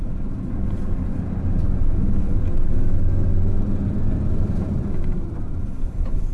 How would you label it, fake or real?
real